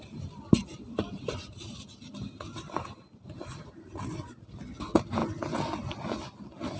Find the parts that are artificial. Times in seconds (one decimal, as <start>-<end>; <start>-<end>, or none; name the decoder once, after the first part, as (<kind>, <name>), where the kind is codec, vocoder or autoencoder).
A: none

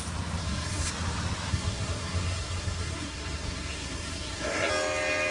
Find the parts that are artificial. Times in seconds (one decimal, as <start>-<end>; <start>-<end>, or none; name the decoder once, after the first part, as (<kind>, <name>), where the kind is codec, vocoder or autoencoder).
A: 0.4-0.9 (codec, SNAC); 1.5-4.7

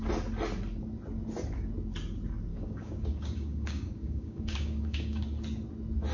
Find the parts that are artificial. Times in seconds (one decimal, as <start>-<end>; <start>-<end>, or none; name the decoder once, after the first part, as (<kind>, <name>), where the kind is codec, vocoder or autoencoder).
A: 2.5-5.2 (codec, DAC)

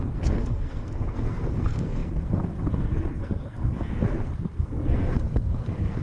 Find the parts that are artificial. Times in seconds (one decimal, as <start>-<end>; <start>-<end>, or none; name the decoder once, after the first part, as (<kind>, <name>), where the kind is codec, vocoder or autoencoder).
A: 0.0-6.0 (codec, SNAC)

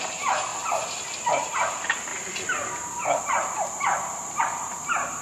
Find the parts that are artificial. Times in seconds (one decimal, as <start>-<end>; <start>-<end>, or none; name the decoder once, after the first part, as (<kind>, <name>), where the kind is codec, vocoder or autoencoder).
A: 0.0-0.5 (vocoder, BigVGAN v2); 1.7-2.1; 4.4-5.2